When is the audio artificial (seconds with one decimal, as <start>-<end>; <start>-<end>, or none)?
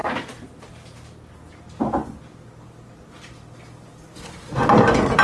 none